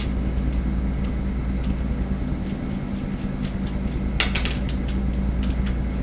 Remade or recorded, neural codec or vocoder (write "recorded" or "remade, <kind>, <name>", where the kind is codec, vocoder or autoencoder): recorded